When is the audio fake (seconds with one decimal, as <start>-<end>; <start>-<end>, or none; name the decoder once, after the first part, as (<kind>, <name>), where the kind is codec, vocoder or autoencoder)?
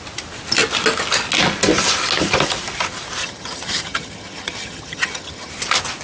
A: 3.2-5.5 (vocoder, HiFi-GAN)